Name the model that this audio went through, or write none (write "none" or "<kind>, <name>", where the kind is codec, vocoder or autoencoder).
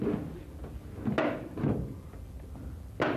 none